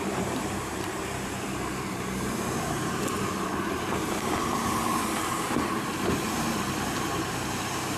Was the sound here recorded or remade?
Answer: remade